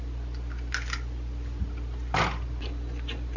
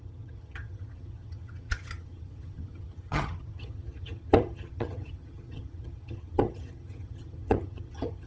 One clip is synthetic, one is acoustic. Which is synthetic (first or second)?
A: second